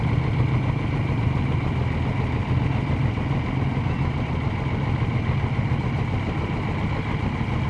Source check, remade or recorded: recorded